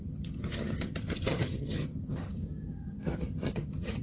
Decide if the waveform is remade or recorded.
remade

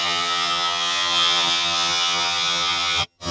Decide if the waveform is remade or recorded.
remade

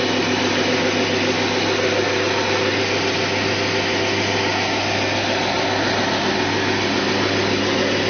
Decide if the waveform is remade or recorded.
recorded